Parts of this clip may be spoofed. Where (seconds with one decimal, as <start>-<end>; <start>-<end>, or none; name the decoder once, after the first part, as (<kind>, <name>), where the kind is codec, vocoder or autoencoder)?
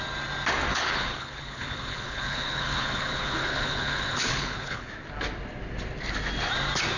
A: 0.7-4.9 (codec, HILCodec)